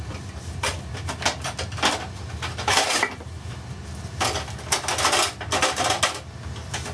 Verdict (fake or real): real